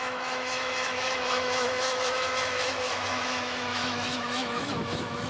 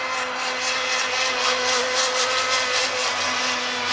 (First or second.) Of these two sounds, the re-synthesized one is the first